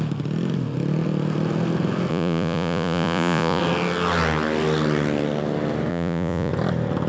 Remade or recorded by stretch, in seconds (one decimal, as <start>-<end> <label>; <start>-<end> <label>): 0.0-2.1 recorded; 2.1-3.6 remade; 3.6-5.9 recorded; 5.9-6.5 remade; 6.5-7.1 recorded